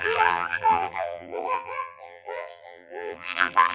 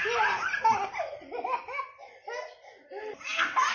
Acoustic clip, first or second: second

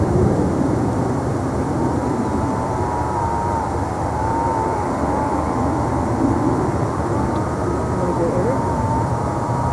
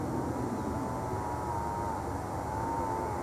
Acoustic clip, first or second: second